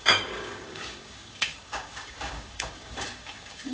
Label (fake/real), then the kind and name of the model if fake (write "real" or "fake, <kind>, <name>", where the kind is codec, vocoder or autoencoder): fake, codec, DAC